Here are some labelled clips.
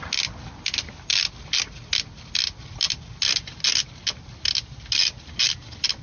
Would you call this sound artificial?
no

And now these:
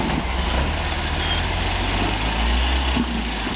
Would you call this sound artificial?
no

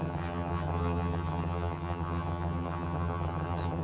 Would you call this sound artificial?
yes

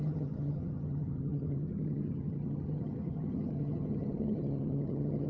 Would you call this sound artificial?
yes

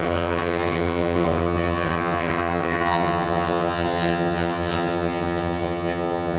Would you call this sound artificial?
yes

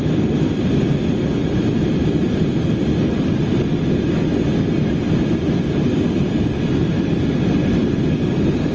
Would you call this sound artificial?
no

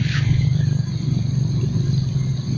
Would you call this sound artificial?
no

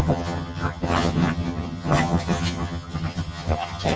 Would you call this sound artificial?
yes